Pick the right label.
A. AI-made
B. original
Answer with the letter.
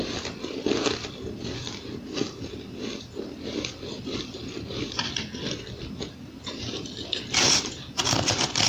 B